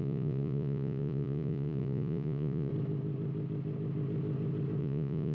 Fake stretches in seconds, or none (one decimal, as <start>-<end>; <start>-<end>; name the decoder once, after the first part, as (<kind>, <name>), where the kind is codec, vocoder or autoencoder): 0.0-2.7 (vocoder, Vocos); 4.8-5.3